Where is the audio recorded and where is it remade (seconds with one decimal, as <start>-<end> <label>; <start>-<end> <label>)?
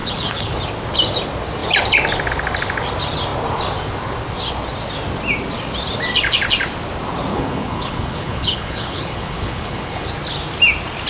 0.0-0.6 remade; 0.6-7.3 recorded; 7.3-10.1 remade; 10.1-11.1 recorded